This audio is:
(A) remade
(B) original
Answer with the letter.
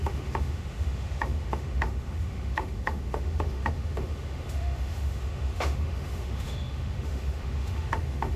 A